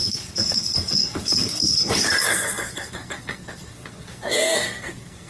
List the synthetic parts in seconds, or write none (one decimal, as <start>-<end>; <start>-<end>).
0.0-1.9; 2.3-5.3